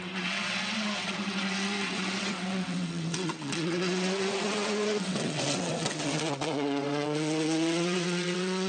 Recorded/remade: remade